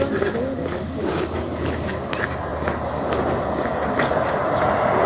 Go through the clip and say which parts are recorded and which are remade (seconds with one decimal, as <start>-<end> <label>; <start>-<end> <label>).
0.0-0.5 recorded; 0.5-2.1 remade; 2.1-5.1 recorded